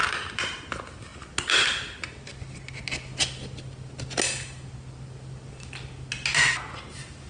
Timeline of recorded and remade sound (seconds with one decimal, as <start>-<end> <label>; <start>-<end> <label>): 0.0-7.3 recorded